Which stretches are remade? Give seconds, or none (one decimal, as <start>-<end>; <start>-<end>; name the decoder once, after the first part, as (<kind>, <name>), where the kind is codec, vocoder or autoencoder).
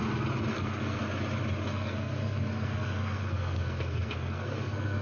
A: 0.5-1.0 (codec, SNAC); 1.7-5.0